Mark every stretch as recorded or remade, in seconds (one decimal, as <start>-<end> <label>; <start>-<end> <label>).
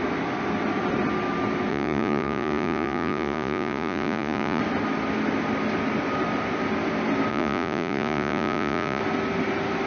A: 0.0-1.7 recorded; 1.7-4.6 remade; 4.6-7.3 recorded; 7.3-9.0 remade; 9.0-9.9 recorded